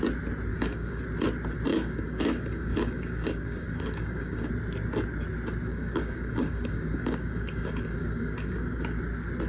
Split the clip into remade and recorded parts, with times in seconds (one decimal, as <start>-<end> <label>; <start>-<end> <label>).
0.0-0.5 recorded; 0.5-1.0 remade; 1.0-1.7 recorded; 1.7-4.5 remade; 4.5-5.7 recorded; 5.7-9.0 remade; 9.0-9.5 recorded